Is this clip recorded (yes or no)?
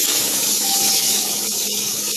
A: no